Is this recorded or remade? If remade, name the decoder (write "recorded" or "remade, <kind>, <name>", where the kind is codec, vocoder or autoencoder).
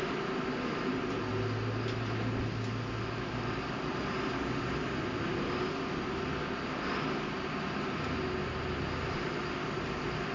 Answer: recorded